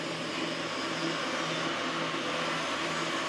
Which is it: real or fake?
real